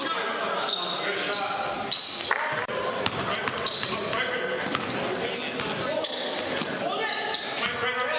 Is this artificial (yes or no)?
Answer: no